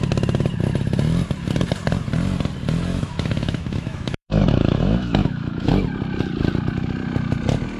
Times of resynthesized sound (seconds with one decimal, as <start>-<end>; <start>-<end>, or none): 2.9-5.7